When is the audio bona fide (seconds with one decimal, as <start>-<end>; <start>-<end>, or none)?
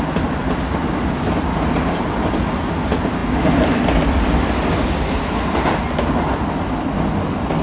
0.0-0.4; 2.1-7.6